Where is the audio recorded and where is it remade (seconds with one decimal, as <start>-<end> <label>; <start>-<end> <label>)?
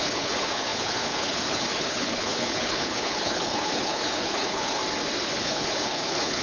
0.0-4.8 remade; 4.8-5.4 recorded; 5.4-6.4 remade